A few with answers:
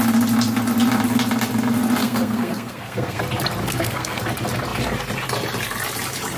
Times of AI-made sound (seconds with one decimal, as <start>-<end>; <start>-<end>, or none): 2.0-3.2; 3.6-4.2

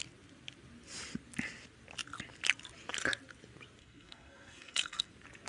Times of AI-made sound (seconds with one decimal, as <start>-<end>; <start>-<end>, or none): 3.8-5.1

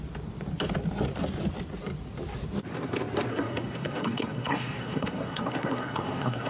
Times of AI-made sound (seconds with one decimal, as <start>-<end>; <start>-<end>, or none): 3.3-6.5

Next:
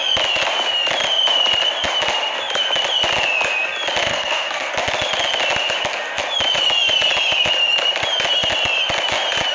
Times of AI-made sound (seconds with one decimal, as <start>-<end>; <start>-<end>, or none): 4.1-4.7

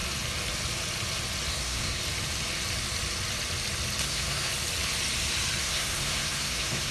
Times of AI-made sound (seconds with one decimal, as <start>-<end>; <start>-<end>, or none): 1.5-2.0; 4.0-4.5; 5.6-6.9

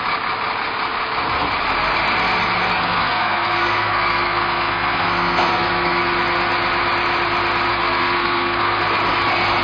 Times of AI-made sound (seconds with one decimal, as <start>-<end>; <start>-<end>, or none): 2.7-6.0; 7.7-8.8

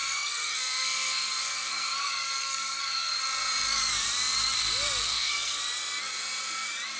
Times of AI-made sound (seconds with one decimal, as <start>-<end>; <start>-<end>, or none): 0.0-3.2; 5.0-5.6

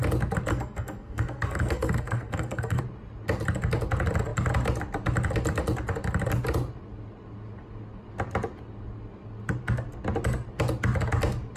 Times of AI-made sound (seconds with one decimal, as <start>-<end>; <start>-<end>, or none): 0.5-2.8